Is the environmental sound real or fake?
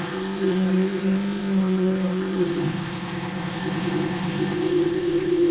fake